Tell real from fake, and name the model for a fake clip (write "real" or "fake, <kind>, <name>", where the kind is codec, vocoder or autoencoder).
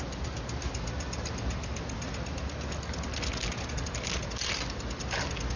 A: real